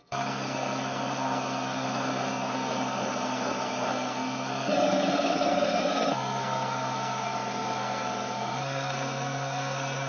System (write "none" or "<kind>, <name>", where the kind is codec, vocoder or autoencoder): codec, SNAC